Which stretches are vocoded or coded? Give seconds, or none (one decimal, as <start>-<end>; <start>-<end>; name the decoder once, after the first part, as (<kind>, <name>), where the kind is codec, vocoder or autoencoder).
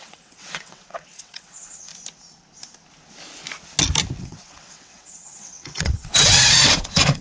0.0-1.9 (vocoder, WaveNeXt); 4.2-7.2